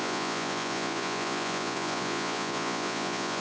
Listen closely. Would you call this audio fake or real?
fake